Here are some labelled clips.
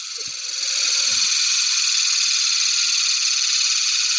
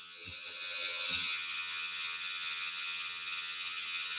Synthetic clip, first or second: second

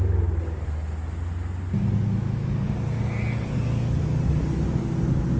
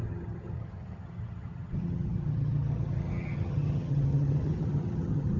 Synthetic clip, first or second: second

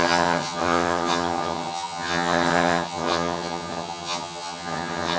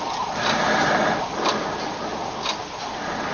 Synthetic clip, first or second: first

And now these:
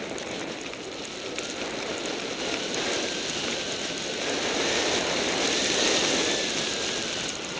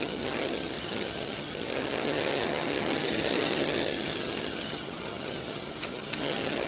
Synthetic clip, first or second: second